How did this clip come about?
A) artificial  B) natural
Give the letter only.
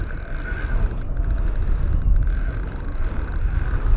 B